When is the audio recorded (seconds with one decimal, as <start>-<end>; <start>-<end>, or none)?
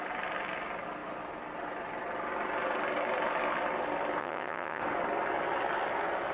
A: 0.0-4.2; 4.8-6.3